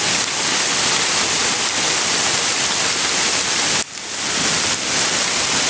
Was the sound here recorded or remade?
recorded